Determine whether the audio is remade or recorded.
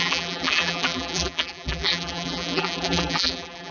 remade